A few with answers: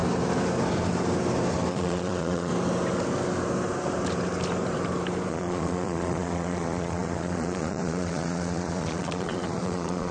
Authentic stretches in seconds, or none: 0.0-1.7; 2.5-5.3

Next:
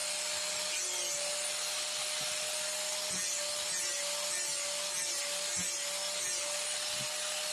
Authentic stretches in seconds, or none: 0.0-7.5

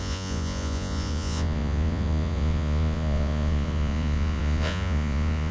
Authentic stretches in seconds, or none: none